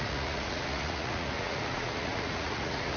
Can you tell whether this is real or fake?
fake